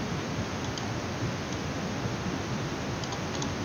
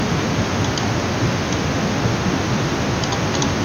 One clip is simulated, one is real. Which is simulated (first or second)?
first